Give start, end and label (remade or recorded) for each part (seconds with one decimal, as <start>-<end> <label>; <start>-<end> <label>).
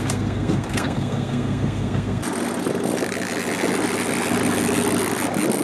0.0-2.2 remade; 2.2-5.6 recorded